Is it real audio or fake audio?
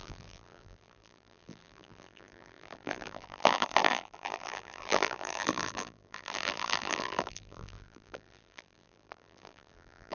fake